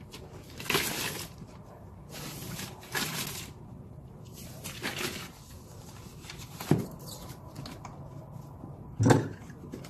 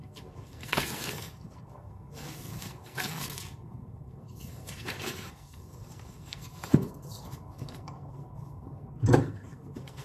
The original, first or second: first